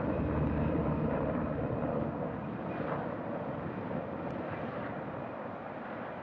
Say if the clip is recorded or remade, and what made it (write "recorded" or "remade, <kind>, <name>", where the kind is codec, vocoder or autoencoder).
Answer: remade, vocoder, BigVGAN v2